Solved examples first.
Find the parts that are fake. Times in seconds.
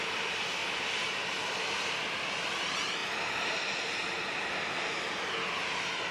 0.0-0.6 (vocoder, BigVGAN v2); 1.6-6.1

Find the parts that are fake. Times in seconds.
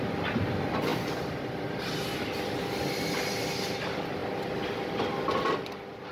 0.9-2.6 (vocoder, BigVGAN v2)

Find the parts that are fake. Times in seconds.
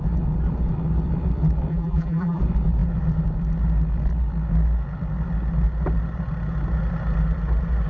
1.7-2.4 (vocoder, BigVGAN v2)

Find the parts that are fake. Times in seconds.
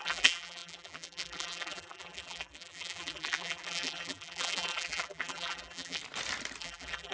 0.0-6.0 (vocoder, BigVGAN v2); 6.6-7.1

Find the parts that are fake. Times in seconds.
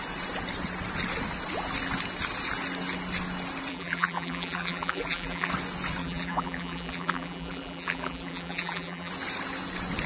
3.7-5.5 (vocoder, BigVGAN v2); 6.0-9.1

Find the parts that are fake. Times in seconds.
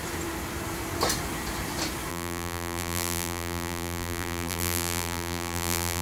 2.1-6.0 (vocoder, BigVGAN v2)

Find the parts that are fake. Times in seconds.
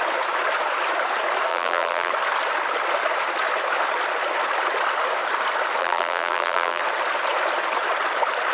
1.5-2.1 (vocoder, BigVGAN v2); 5.8-6.8